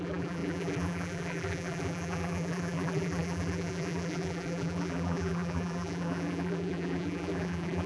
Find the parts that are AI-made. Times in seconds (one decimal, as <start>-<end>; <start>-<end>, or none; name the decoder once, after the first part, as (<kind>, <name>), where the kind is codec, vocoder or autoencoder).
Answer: 0.0-7.9 (vocoder, BigVGAN v2)